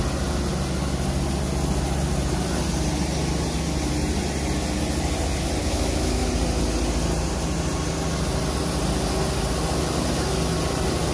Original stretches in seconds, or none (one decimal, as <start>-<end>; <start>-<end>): 0.0-5.6; 6.3-11.1